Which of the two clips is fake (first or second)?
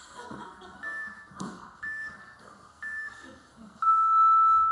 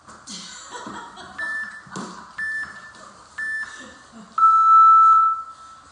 first